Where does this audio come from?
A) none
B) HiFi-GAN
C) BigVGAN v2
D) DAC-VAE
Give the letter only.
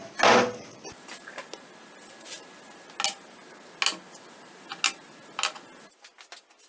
A